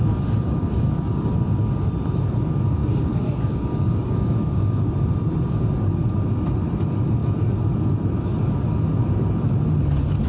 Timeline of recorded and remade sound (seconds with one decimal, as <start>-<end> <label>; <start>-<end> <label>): 0.0-0.6 recorded; 0.6-1.3 remade; 1.3-2.8 recorded; 2.8-4.9 remade; 4.9-10.3 recorded